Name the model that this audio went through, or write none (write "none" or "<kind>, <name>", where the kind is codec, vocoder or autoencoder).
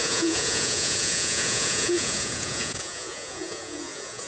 vocoder, Vocos